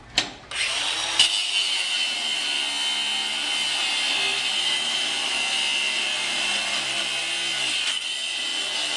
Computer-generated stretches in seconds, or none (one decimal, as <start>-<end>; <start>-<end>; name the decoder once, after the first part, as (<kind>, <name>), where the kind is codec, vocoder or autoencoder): 8.5-9.0 (vocoder, BigVGAN v2)